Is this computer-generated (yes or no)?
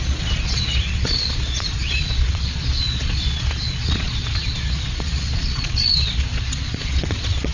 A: yes